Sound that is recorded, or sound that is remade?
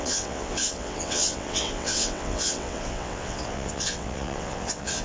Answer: remade